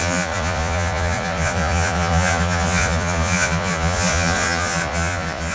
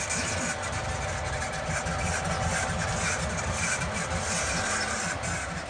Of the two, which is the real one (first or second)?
second